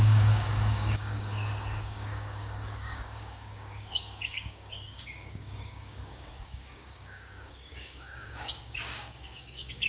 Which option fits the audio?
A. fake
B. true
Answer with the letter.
A